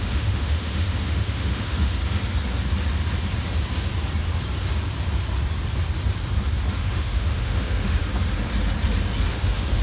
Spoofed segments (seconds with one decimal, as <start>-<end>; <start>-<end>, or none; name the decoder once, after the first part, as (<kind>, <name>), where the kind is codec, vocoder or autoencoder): 0.0-2.0 (autoencoder, DAC-VAE); 6.8-8.0; 9.3-9.8